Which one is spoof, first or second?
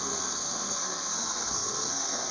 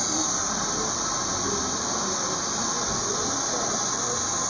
first